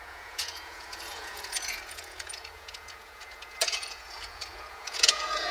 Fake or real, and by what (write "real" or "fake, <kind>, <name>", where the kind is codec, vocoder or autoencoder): fake, vocoder, Vocos